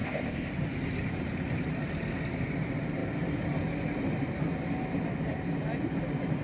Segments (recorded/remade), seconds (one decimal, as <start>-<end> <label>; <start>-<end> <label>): 0.0-0.5 remade; 0.5-6.4 recorded